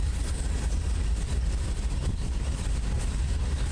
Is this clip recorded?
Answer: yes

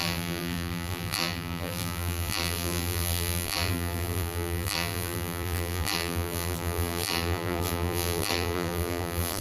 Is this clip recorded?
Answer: no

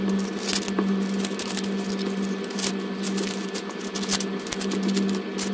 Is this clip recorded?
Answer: yes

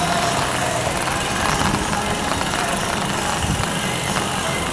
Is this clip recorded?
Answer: yes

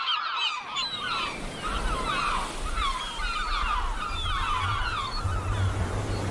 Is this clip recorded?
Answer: yes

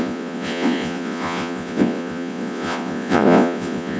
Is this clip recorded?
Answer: no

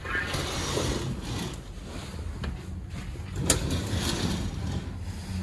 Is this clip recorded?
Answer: yes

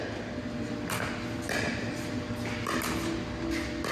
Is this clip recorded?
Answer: yes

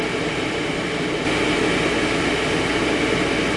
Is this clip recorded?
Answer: yes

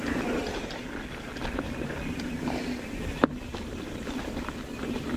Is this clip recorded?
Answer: yes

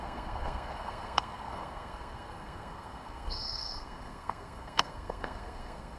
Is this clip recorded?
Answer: no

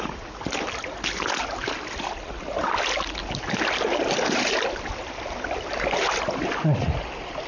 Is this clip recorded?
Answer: yes